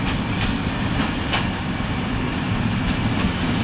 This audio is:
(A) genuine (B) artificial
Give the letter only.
A